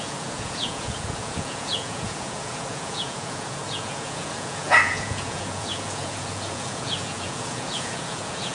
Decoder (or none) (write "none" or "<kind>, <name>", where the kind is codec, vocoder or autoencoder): vocoder, Vocos